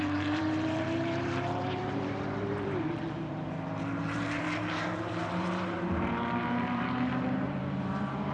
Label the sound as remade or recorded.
remade